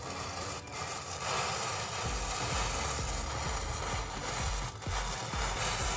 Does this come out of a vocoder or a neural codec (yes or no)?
no